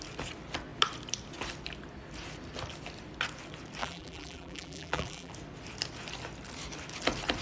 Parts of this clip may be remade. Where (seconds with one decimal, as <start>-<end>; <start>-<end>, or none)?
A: 3.8-5.3